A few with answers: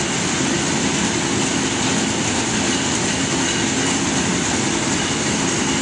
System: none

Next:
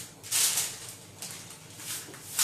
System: none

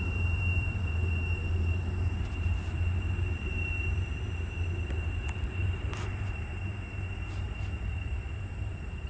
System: vocoder, BigVGAN v2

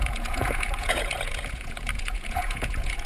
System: vocoder, Vocos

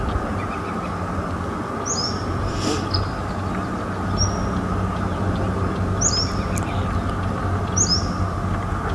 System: none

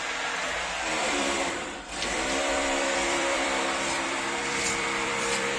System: vocoder, BigVGAN v2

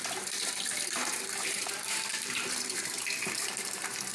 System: vocoder, BigVGAN v2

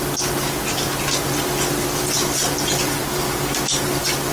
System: none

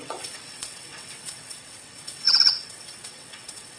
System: vocoder, WaveNeXt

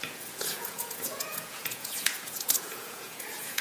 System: vocoder, Vocos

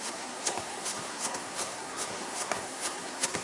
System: codec, SNAC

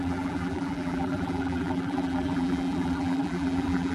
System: vocoder, BigVGAN v2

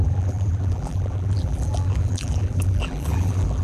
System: vocoder, BigVGAN v2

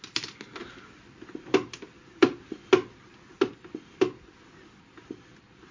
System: none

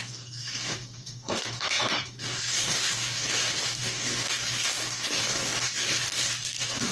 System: codec, DAC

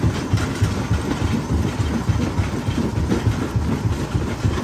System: none